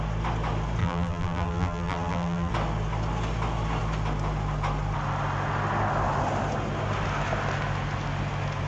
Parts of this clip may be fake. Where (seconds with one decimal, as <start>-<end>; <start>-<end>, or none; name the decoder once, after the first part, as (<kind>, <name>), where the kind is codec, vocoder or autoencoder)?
0.8-2.5 (vocoder, BigVGAN v2)